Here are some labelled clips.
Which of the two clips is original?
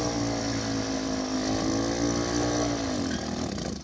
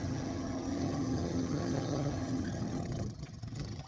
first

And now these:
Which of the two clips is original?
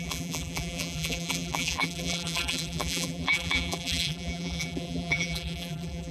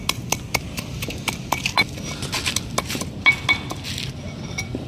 second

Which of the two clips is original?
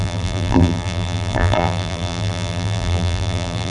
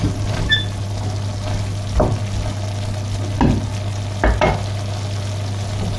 second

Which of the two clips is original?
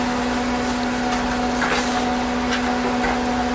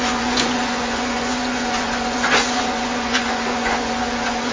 first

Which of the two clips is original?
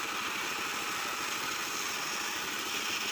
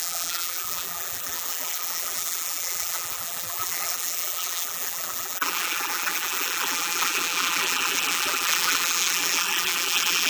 first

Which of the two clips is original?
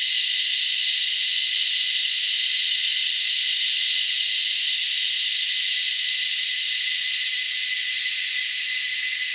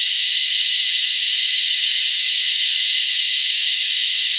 first